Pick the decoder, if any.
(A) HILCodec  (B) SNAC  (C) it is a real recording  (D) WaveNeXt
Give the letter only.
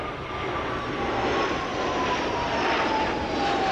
C